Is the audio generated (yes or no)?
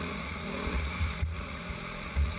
yes